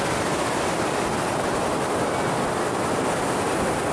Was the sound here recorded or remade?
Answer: recorded